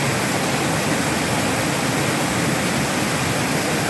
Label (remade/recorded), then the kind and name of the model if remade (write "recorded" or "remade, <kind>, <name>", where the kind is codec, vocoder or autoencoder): recorded